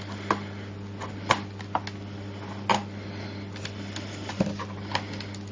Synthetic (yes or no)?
no